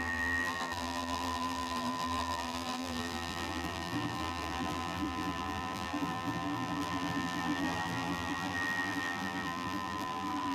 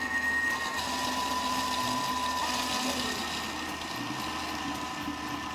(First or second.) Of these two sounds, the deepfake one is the first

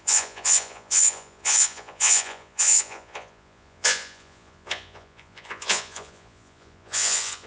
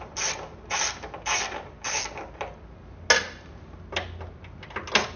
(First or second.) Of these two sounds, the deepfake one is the first